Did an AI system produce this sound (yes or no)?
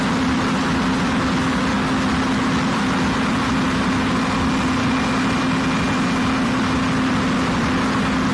no